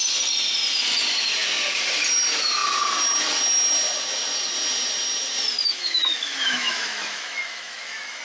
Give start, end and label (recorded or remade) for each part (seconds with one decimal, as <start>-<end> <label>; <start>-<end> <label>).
0.0-5.7 recorded; 5.7-8.2 remade